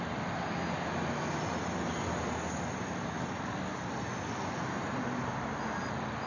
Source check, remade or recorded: recorded